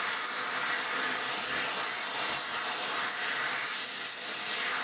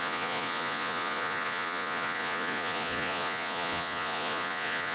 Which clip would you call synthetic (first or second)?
second